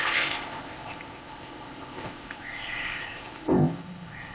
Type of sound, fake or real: fake